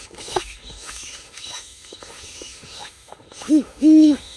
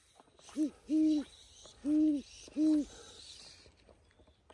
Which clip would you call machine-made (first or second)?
first